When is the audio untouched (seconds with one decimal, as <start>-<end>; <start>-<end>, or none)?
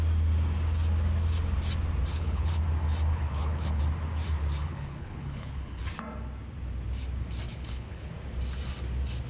0.0-2.1; 2.6-3.1; 3.8-4.6; 5.8-7.5; 8.1-9.3